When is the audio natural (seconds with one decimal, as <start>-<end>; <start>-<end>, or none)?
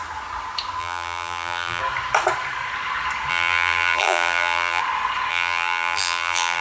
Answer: 0.0-0.8; 1.8-3.3; 4.8-5.3